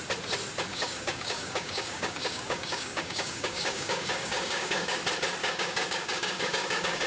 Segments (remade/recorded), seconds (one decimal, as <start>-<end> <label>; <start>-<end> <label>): 0.0-0.7 recorded; 0.7-5.0 remade; 5.0-5.4 recorded; 5.4-7.1 remade